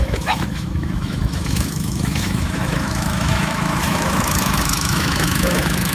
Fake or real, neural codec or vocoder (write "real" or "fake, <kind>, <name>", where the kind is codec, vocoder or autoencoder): fake, autoencoder, DAC-VAE